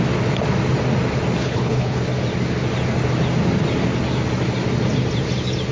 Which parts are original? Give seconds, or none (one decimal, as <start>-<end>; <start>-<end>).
0.0-1.4; 2.0-5.7